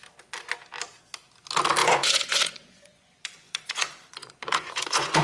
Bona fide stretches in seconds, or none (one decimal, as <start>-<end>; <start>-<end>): 0.0-1.8